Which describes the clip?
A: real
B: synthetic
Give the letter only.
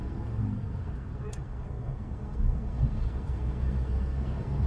B